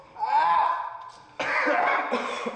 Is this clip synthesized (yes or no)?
no